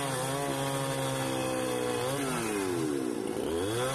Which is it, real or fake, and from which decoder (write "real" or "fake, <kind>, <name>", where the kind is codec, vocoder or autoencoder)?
real